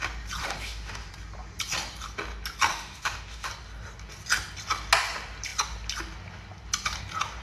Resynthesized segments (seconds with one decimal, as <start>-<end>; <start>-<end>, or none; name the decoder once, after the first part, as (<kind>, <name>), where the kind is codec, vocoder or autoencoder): 0.4-1.1 (autoencoder, DAC-VAE); 2.7-3.5